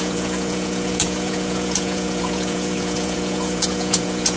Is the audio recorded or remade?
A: remade